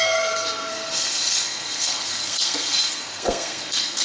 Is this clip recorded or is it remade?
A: remade